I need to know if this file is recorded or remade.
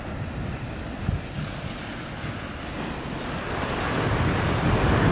recorded